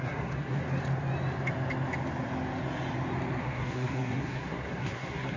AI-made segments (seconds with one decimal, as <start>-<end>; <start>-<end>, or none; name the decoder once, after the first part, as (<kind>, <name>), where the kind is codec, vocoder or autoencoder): 0.0-0.6 (codec, SNAC); 3.4-5.4